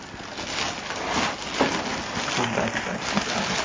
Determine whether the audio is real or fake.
real